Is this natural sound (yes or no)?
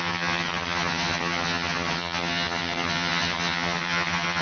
no